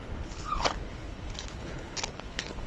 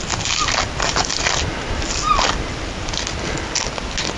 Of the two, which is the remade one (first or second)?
first